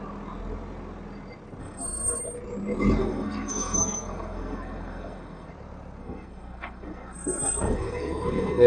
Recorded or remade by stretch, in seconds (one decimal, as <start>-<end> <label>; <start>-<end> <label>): 0.0-1.6 recorded; 1.6-2.2 remade; 2.2-3.0 recorded; 3.0-5.5 remade; 5.5-6.0 recorded; 6.0-8.7 remade